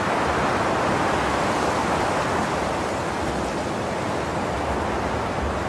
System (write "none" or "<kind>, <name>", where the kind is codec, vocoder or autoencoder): none